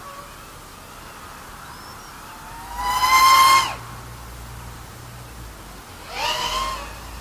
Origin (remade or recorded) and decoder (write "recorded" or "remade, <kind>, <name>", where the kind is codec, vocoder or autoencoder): recorded